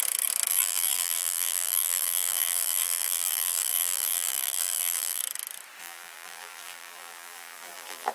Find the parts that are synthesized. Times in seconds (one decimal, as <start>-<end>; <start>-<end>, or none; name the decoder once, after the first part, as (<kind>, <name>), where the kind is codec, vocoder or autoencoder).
0.5-5.2 (vocoder, BigVGAN v2); 5.8-8.1